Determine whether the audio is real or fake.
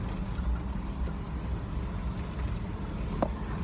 real